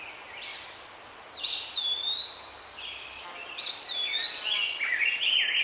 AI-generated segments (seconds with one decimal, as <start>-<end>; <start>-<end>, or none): none